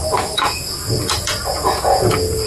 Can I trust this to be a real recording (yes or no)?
no